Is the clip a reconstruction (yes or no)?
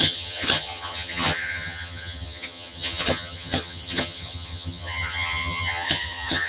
yes